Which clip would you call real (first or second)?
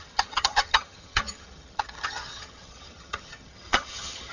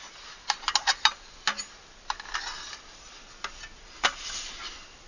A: second